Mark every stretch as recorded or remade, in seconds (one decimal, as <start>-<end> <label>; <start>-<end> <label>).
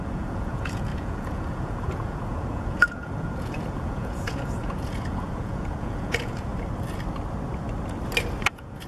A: 0.0-6.5 remade; 6.5-8.5 recorded; 8.5-8.9 remade